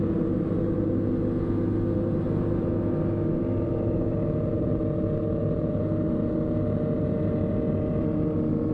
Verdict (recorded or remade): recorded